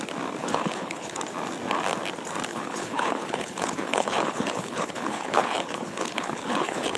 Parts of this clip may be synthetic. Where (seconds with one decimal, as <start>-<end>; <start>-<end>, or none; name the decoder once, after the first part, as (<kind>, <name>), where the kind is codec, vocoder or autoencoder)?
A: 0.4-1.2 (codec, HILCodec); 2.5-7.0